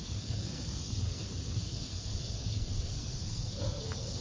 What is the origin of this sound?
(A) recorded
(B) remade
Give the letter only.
B